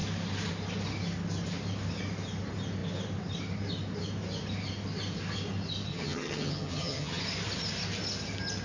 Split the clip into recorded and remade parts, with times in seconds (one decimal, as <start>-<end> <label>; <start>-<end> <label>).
0.0-5.9 recorded; 5.9-7.2 remade; 7.2-8.6 recorded